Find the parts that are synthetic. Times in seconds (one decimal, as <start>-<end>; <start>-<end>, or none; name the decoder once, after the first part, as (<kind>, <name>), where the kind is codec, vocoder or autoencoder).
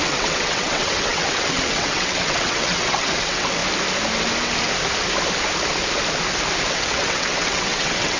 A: 0.0-3.6 (vocoder, WaveNeXt); 6.7-8.2